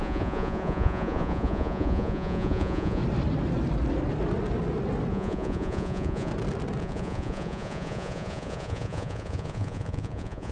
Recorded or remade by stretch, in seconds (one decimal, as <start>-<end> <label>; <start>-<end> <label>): 0.0-3.0 remade; 3.0-5.1 recorded; 5.1-6.3 remade; 6.3-6.8 recorded; 6.8-10.5 remade